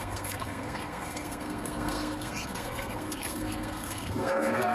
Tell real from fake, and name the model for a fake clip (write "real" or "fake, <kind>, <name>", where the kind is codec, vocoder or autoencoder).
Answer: fake, codec, SNAC